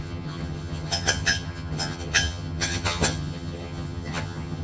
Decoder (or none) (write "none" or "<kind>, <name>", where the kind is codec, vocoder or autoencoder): vocoder, HiFi-GAN